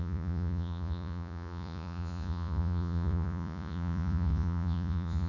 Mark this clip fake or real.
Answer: fake